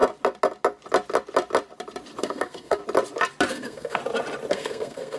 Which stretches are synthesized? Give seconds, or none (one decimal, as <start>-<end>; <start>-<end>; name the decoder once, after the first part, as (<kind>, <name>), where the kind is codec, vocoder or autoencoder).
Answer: 2.2-2.8 (codec, SNAC); 3.5-4.0; 4.5-5.2